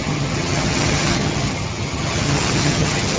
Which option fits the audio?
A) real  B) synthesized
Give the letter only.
B